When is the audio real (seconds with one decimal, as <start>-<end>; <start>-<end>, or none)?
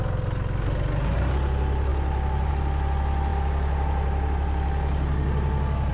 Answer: 0.0-1.9; 2.5-3.3